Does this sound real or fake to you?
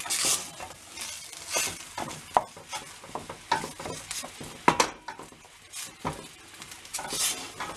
real